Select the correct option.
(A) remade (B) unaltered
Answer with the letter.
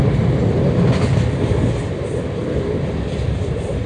B